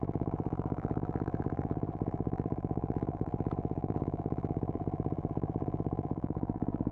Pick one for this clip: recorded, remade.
remade